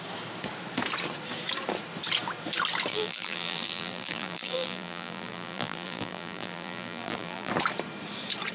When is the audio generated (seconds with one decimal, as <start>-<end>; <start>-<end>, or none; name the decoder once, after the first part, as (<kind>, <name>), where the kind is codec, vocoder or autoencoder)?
2.9-7.5 (vocoder, BigVGAN v2)